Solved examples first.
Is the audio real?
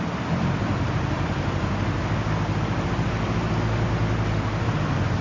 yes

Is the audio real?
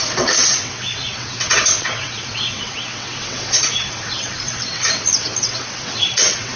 no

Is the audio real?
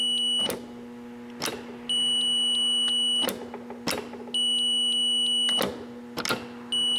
yes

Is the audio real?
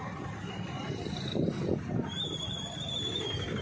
yes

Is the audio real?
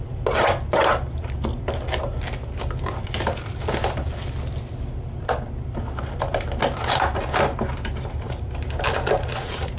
yes